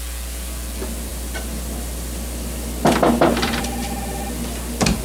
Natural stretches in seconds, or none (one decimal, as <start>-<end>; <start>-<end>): 0.0-1.1; 3.6-5.0